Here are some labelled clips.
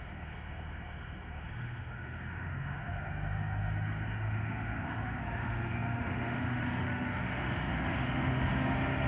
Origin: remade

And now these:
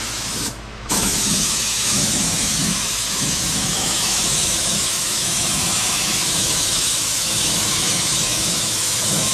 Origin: remade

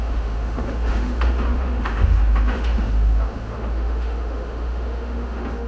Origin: remade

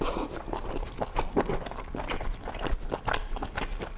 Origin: recorded